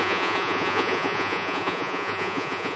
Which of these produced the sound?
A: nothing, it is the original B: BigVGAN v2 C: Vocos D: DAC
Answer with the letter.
C